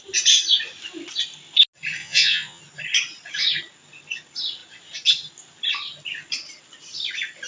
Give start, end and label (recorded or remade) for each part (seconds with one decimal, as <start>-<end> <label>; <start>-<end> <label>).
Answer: 0.0-2.0 recorded; 2.0-2.6 remade; 2.6-7.5 recorded